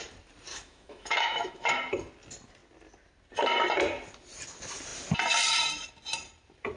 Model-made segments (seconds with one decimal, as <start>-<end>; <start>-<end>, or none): 0.5-1.7